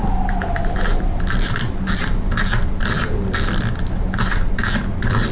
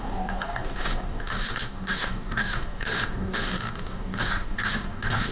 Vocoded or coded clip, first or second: second